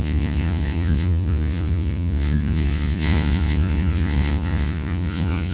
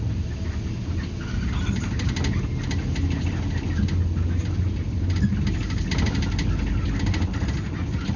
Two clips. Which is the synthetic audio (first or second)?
first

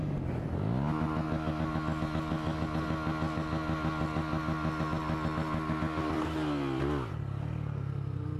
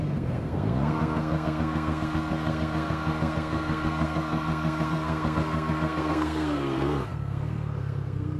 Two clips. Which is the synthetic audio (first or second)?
second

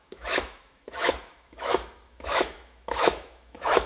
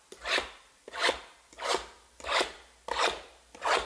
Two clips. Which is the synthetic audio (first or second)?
first